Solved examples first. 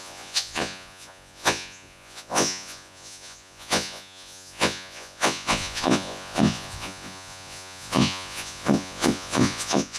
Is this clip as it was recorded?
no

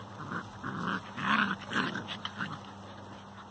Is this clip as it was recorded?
yes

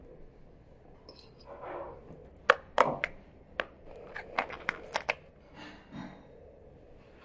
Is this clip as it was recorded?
yes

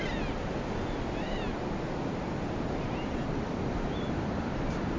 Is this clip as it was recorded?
yes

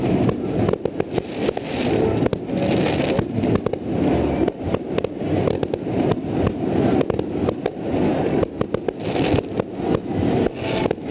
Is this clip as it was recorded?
yes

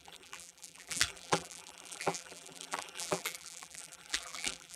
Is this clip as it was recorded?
no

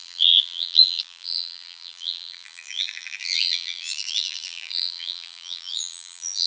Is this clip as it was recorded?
no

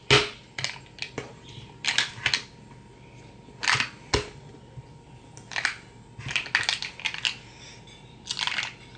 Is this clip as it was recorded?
yes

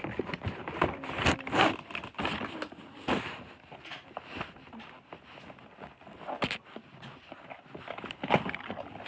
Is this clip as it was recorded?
yes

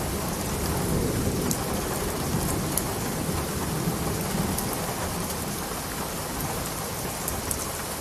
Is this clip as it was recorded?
yes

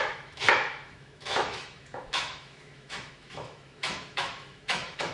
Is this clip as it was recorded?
no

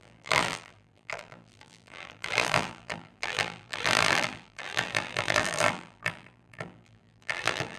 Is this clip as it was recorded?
no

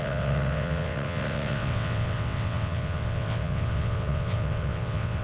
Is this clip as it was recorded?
no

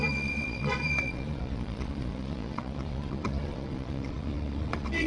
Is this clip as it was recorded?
no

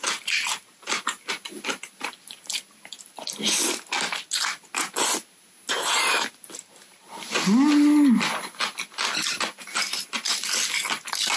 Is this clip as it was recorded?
yes